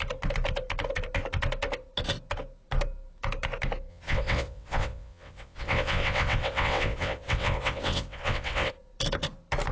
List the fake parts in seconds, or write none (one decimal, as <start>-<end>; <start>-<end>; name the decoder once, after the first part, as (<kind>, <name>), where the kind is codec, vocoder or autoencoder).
3.9-8.7 (vocoder, WaveNeXt)